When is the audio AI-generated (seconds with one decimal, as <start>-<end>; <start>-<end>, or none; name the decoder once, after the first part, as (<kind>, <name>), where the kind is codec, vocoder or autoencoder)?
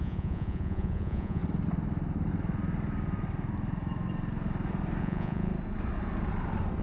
0.0-1.4 (vocoder, Vocos); 5.0-5.5